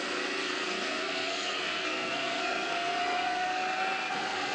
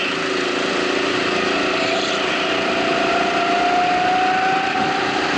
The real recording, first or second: second